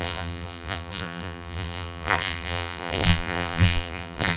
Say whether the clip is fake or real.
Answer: fake